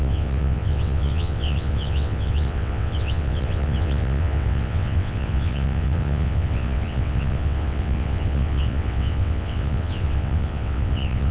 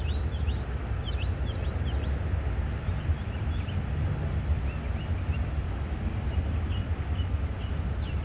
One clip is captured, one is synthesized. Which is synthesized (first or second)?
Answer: first